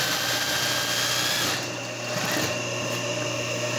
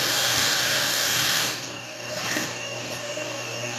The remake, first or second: second